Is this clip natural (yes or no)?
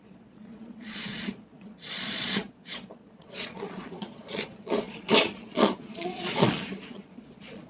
no